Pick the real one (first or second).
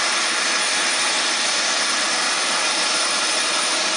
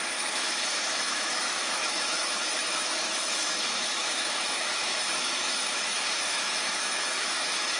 first